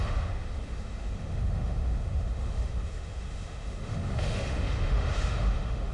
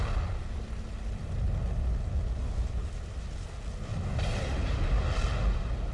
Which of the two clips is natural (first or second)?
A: second